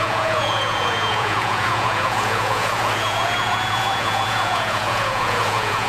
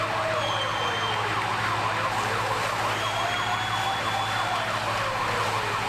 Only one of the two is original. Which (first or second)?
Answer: second